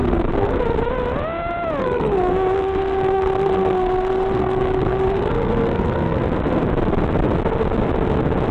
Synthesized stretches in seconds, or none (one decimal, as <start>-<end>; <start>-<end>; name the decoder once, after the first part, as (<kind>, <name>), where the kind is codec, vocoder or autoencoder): 0.0-0.6 (codec, SNAC); 1.8-6.2